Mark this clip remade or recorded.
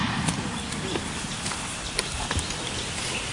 recorded